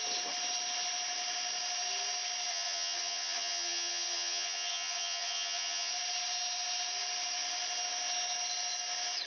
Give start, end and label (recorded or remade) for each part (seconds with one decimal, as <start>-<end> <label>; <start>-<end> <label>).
0.0-2.5 recorded; 2.5-5.9 remade; 5.9-9.3 recorded